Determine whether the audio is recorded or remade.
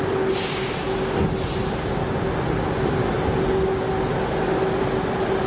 recorded